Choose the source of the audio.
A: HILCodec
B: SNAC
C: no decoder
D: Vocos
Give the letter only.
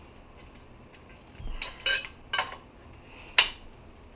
C